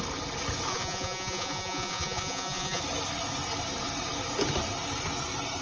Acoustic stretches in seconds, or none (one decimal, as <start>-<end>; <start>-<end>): 0.0-0.7; 2.8-5.6